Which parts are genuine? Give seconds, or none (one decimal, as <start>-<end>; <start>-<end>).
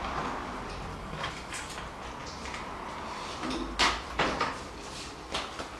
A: 0.0-0.9; 1.7-5.8